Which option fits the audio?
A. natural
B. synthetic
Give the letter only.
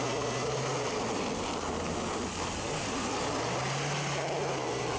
A